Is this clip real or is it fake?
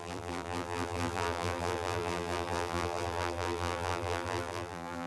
fake